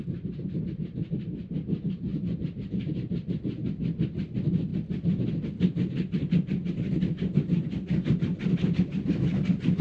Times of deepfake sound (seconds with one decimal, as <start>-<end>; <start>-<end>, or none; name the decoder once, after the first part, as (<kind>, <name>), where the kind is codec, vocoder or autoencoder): 2.1-3.5 (vocoder, BigVGAN v2)